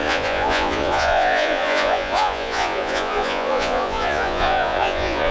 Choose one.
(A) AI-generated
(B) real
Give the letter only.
A